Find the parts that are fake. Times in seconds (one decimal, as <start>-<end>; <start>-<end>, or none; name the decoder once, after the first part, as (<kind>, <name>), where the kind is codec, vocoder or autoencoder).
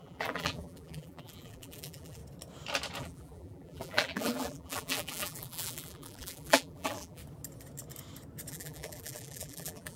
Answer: 0.0-2.2 (vocoder, BigVGAN v2); 3.0-7.2; 8.5-10.0